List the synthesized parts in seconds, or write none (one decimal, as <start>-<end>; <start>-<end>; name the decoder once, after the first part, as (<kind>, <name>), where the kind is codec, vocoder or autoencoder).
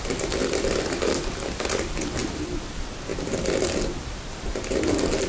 2.2-2.7 (vocoder, BigVGAN v2)